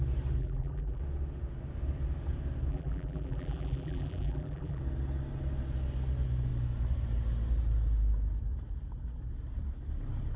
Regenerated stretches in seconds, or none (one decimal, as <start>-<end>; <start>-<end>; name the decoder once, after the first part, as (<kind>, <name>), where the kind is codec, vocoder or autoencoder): 0.4-1.0 (vocoder, BigVGAN v2); 2.7-4.8